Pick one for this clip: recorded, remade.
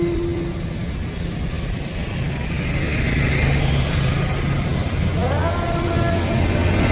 recorded